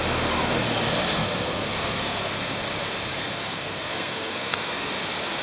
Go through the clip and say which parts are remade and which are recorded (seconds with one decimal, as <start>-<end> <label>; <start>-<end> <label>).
0.0-1.1 recorded; 1.1-2.6 remade; 2.6-3.1 recorded; 3.1-4.9 remade; 4.9-5.4 recorded